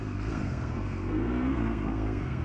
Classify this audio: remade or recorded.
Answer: remade